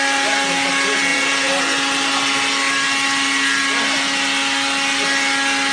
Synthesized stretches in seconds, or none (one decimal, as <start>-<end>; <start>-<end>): 1.1-1.6